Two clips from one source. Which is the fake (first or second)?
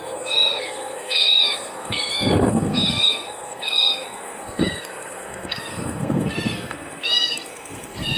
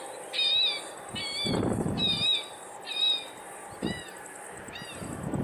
first